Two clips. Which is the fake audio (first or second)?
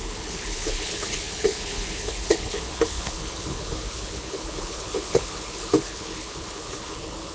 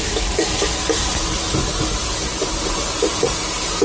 first